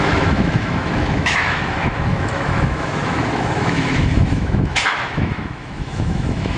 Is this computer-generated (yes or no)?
yes